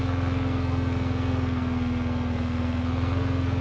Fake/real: fake